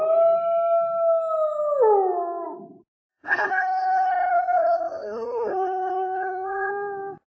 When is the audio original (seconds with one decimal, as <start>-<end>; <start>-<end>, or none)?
0.0-3.1; 6.7-7.3